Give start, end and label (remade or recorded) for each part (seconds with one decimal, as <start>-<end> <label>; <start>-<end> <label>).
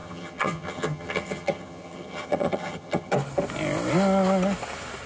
0.0-3.1 remade; 3.1-5.1 recorded